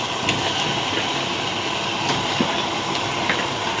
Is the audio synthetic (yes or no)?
no